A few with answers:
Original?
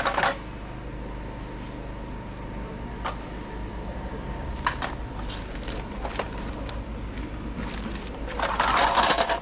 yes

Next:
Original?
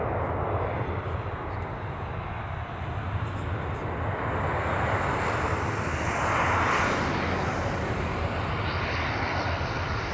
yes